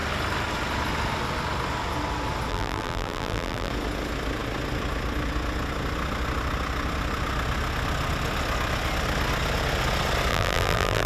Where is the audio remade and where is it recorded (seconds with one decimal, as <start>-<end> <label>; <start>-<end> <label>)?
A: 0.0-2.5 recorded; 2.5-3.7 remade; 3.7-10.3 recorded; 10.3-11.1 remade